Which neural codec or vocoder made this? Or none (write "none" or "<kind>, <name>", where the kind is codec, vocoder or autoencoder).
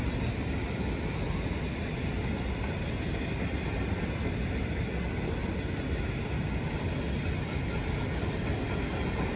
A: none